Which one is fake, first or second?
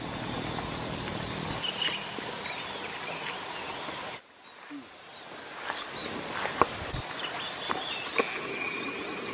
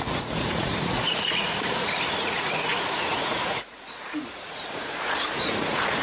second